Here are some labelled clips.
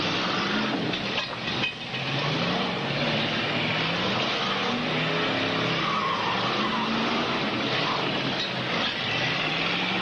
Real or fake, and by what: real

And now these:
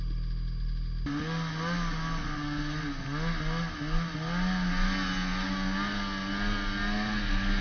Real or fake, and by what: real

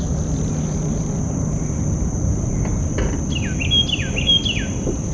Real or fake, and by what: real